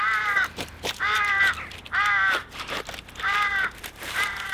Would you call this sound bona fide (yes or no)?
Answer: yes